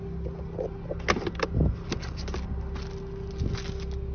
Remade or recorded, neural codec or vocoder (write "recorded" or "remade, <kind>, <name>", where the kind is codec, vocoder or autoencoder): recorded